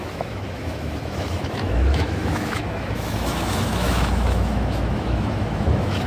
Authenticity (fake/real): fake